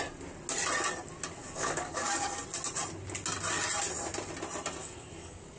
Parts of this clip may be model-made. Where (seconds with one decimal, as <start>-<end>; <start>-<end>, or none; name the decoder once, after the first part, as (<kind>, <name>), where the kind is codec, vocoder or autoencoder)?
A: 1.4-2.4 (codec, DAC); 4.8-5.6